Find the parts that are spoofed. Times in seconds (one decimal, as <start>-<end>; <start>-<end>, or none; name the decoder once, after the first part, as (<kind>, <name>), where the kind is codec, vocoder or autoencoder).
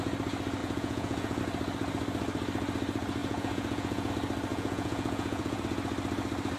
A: 0.6-1.4 (vocoder, Vocos); 3.2-4.1; 4.5-5.6